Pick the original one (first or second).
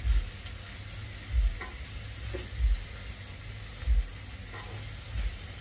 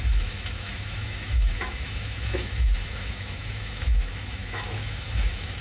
first